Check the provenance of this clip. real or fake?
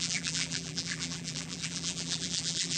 fake